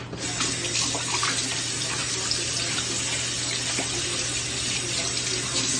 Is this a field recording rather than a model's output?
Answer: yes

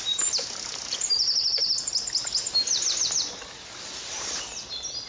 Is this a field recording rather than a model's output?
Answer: yes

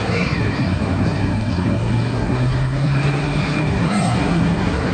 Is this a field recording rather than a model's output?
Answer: no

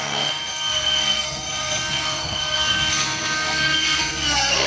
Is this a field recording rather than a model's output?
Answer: no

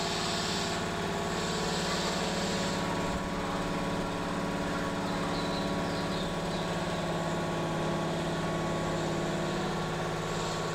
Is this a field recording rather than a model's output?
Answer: yes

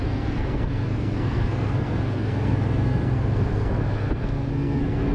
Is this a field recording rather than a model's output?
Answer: no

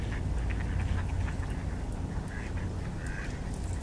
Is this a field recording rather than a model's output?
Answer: yes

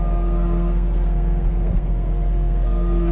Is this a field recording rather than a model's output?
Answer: no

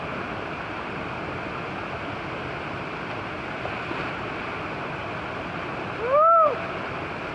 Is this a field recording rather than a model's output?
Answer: yes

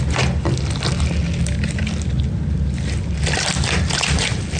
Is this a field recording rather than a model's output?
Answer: yes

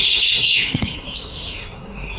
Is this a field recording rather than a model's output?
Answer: no